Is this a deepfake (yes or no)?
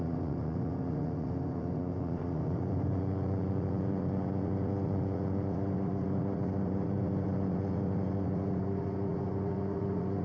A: yes